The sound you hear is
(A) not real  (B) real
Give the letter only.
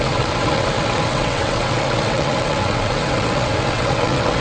A